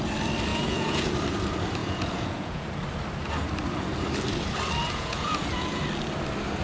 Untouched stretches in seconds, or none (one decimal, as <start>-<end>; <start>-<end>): 0.0-0.5; 1.1-1.8; 2.7-4.8; 5.8-6.6